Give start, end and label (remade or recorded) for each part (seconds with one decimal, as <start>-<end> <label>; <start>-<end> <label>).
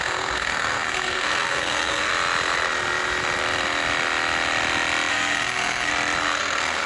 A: 0.0-2.1 remade; 2.1-5.1 recorded; 5.1-5.9 remade; 5.9-6.4 recorded; 6.4-6.9 remade